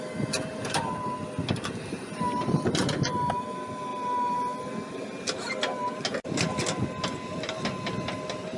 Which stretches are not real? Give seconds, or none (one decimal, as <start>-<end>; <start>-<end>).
none